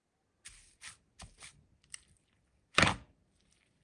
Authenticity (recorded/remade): recorded